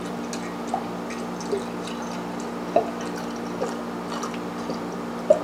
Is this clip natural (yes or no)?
yes